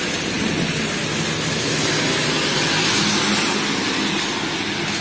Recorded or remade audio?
recorded